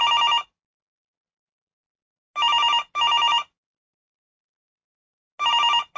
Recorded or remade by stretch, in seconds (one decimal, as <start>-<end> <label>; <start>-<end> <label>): 0.0-6.0 recorded